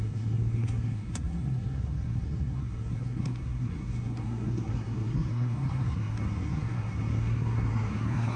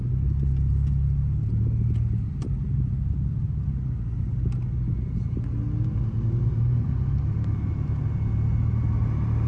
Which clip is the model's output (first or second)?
first